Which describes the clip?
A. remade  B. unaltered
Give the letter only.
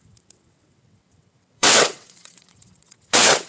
A